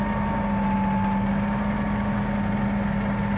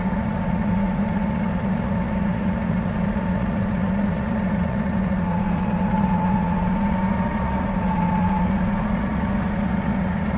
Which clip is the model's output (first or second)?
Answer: second